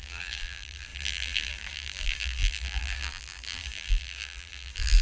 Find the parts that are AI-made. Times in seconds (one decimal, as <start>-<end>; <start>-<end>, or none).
0.0-5.0